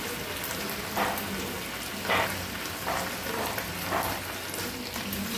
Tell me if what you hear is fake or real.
real